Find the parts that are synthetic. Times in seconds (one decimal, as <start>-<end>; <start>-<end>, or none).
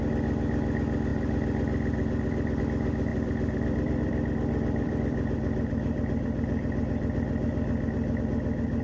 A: 1.1-2.6; 3.1-8.2